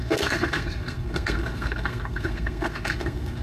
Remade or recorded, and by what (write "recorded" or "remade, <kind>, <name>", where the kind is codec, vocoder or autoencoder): remade, codec, SNAC